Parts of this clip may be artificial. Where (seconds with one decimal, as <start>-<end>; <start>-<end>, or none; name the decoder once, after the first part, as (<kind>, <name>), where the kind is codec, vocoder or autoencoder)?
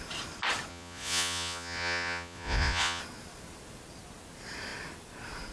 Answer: 0.7-3.0 (vocoder, Vocos)